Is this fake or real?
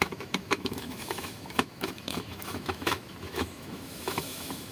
fake